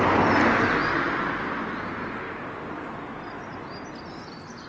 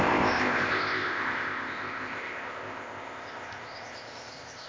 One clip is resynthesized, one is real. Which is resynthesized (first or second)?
second